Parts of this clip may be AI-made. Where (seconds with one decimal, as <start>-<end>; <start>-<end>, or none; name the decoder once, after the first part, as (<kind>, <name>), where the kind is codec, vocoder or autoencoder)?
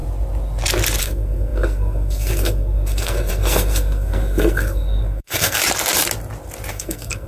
1.0-5.6 (codec, SNAC); 6.7-7.3